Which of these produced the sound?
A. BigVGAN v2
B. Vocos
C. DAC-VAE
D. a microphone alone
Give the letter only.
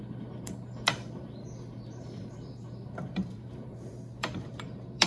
A